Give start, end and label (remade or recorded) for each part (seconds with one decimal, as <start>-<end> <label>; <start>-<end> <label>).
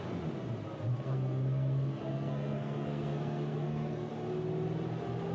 0.0-0.9 recorded; 0.9-4.1 remade; 4.1-5.3 recorded